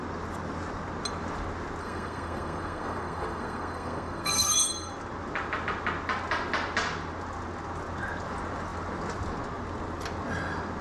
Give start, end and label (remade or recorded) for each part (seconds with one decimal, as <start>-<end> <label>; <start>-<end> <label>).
0.0-1.8 recorded; 1.8-4.9 remade; 4.9-10.8 recorded